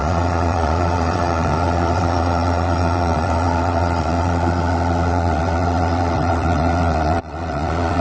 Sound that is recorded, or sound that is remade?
remade